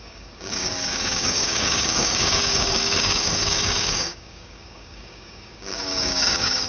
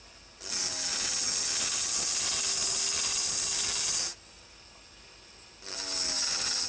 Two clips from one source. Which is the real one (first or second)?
second